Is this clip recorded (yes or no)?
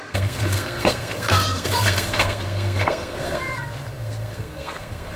no